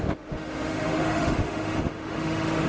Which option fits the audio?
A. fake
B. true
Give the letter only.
A